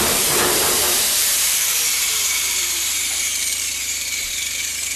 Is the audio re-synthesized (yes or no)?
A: yes